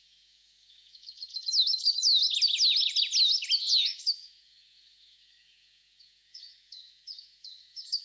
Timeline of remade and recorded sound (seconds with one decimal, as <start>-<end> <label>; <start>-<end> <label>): 0.0-2.1 remade; 2.1-3.7 recorded; 3.7-8.0 remade